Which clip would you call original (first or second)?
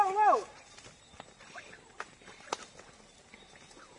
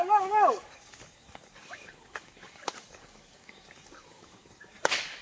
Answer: first